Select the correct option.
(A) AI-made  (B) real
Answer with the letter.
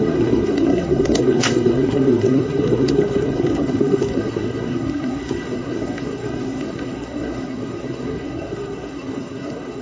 A